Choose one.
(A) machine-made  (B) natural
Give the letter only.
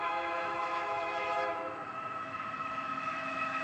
A